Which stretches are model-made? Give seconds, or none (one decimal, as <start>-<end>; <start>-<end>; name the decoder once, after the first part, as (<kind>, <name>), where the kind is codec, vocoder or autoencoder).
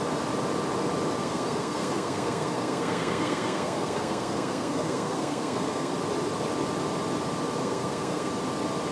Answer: 1.2-5.9 (codec, SNAC); 7.6-8.3